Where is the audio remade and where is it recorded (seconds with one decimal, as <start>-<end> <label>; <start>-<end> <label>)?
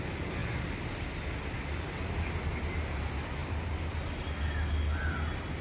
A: 0.0-5.6 recorded